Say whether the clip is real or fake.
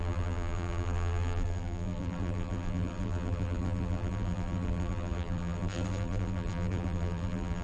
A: fake